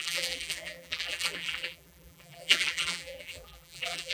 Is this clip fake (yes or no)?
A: yes